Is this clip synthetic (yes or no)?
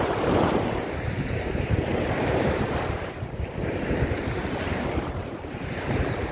yes